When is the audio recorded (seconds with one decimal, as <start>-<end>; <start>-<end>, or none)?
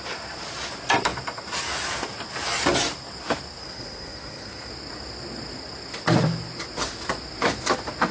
0.0-3.6; 4.7-8.1